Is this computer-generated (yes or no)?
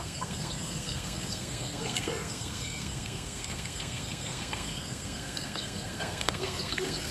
yes